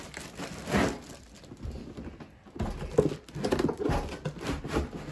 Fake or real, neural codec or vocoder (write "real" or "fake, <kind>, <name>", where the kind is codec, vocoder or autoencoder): real